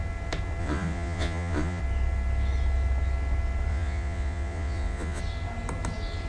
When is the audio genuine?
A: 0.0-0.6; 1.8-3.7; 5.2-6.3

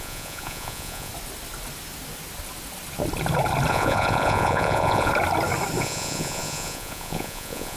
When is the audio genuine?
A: 1.1-3.7; 5.1-5.8